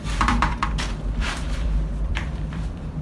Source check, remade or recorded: remade